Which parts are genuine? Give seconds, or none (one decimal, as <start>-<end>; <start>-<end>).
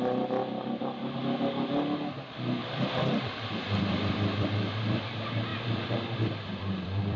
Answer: 0.0-0.4; 1.2-2.6; 5.0-5.5